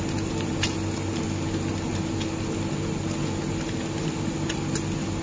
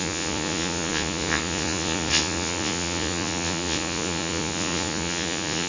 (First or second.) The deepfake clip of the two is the second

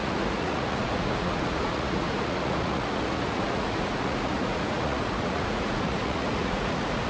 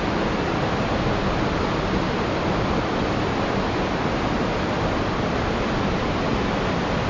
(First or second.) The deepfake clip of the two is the first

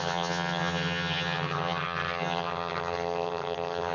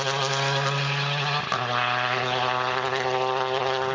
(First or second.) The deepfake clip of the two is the first